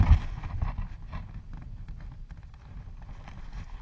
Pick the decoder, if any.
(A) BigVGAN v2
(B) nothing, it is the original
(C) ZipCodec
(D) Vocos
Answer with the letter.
B